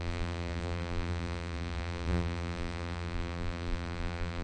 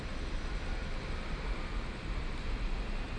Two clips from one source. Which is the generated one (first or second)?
first